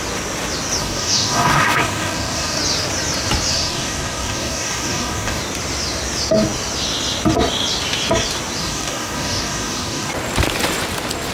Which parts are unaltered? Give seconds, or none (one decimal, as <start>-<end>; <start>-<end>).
0.0-0.8; 2.6-3.5; 5.4-8.6; 10.1-11.3